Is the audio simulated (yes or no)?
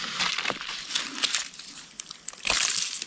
no